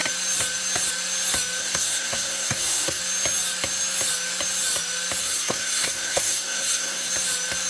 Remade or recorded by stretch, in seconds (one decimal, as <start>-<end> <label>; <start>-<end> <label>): 0.0-1.6 recorded; 1.6-3.0 remade; 3.0-5.2 recorded; 5.2-7.1 remade; 7.1-7.7 recorded